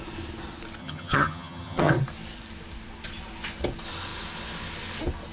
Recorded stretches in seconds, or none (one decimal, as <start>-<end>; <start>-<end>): 0.0-0.8; 1.9-5.3